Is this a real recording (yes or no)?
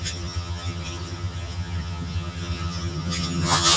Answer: no